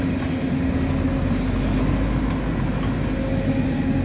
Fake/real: real